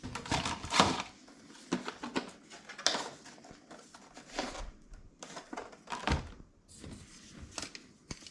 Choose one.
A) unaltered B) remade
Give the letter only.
A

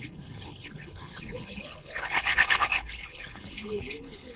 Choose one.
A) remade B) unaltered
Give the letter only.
A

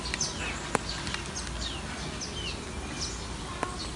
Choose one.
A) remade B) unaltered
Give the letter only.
B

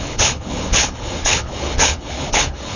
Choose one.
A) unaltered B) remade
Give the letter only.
B